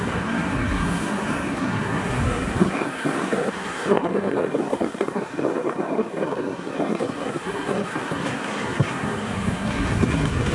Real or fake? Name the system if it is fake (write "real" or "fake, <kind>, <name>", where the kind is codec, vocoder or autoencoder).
fake, codec, SNAC